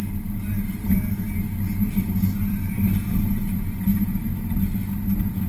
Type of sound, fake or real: real